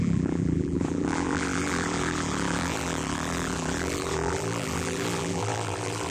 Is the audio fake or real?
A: fake